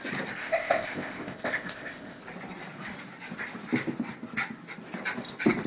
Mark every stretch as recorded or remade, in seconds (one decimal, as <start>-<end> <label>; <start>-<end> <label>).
0.0-0.4 recorded; 0.4-2.2 remade; 2.2-5.7 recorded